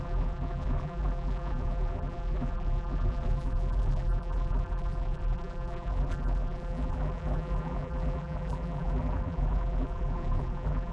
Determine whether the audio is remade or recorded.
remade